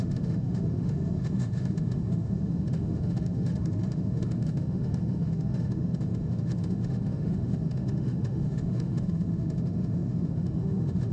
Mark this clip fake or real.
fake